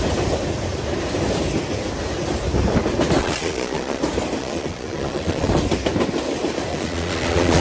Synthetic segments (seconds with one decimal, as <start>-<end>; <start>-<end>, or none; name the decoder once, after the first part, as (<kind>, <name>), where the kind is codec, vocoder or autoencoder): 3.2-4.0 (vocoder, Vocos); 4.4-5.5; 6.7-7.6

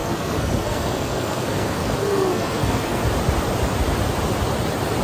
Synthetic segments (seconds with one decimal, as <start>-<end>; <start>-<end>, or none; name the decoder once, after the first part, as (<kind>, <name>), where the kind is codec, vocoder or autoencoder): 0.0-3.0 (codec, SNAC)